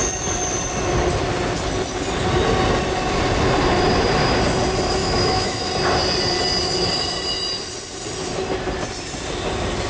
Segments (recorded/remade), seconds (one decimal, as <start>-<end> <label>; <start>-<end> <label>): 0.0-5.0 recorded; 5.0-5.7 remade; 5.7-9.9 recorded